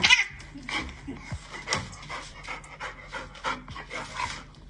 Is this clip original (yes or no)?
yes